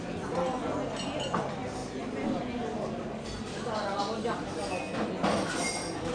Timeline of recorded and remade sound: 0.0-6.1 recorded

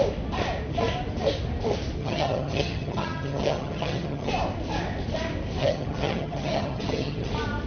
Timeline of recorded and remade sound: 0.0-2.0 recorded; 2.0-4.3 remade; 4.3-5.6 recorded; 5.6-7.3 remade; 7.3-7.7 recorded